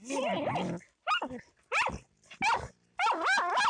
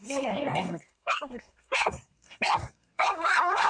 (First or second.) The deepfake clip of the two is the second